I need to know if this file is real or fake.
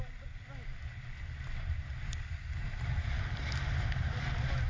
real